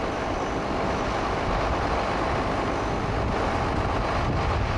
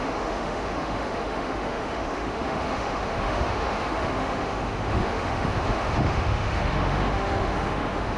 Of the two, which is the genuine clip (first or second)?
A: first